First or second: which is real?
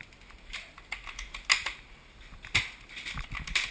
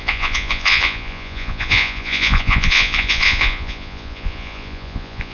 first